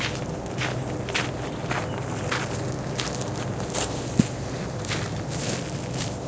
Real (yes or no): yes